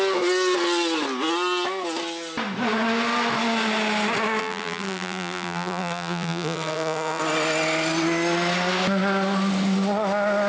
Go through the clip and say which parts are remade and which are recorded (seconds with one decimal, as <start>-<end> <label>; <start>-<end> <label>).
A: 0.0-4.4 recorded; 4.4-7.2 remade; 7.2-10.5 recorded